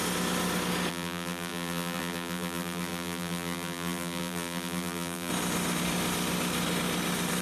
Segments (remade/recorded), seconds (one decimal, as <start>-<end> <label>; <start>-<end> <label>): 0.0-0.9 recorded; 0.9-5.3 remade; 5.3-7.4 recorded